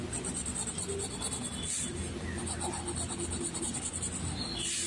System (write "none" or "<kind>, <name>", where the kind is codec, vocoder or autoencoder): none